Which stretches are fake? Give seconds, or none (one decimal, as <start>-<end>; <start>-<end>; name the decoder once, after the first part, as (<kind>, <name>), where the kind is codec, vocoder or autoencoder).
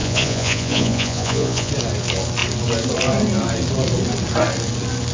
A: 0.0-1.7 (vocoder, Vocos)